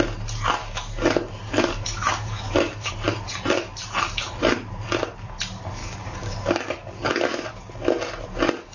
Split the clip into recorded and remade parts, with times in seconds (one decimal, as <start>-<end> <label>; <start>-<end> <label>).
0.0-0.6 recorded; 0.6-2.9 remade; 2.9-5.8 recorded; 5.8-7.3 remade; 7.3-8.7 recorded